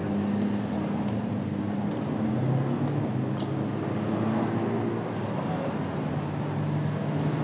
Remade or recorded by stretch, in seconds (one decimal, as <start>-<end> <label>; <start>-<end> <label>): 0.0-7.4 recorded